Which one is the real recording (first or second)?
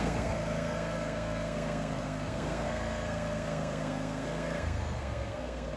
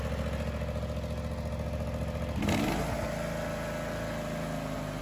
second